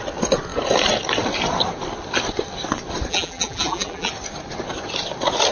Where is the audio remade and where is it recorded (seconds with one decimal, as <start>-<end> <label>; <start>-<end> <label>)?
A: 0.0-3.1 recorded; 3.1-4.1 remade; 4.1-5.5 recorded